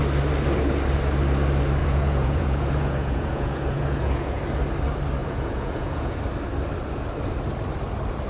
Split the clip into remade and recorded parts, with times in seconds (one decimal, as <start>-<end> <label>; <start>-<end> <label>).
0.0-1.8 recorded; 1.8-4.4 remade; 4.4-5.2 recorded; 5.2-6.2 remade; 6.2-8.3 recorded